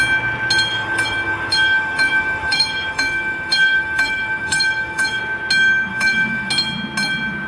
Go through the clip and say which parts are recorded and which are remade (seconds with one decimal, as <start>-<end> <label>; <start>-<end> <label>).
0.0-0.7 recorded; 0.7-5.2 remade; 5.2-5.9 recorded; 5.9-6.5 remade; 6.5-7.5 recorded